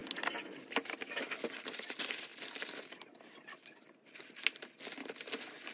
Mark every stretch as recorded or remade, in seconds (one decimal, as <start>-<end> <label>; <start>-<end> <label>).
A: 0.0-5.7 recorded